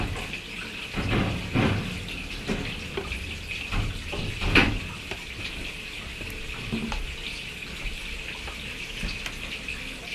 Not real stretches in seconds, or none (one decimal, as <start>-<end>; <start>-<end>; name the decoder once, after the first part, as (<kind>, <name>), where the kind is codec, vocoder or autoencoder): none